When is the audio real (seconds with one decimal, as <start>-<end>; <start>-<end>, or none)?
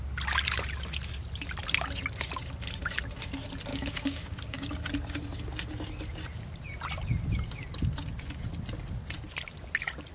0.0-3.7; 4.7-10.1